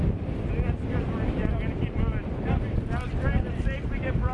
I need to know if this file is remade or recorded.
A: recorded